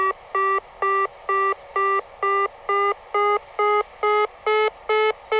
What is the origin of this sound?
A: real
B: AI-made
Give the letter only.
A